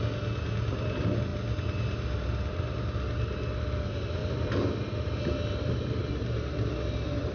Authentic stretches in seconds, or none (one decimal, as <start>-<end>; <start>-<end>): 0.0-4.2

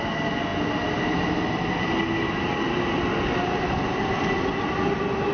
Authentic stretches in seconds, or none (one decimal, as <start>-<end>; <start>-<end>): 0.0-5.3

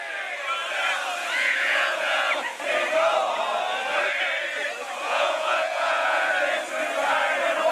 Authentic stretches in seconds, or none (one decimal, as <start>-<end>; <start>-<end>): 0.0-1.2; 2.6-5.0; 6.3-7.7

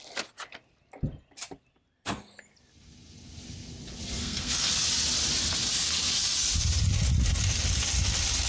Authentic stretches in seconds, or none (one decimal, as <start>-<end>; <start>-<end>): 0.0-4.2; 4.7-8.5